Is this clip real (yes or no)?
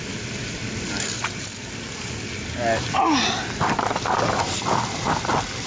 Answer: no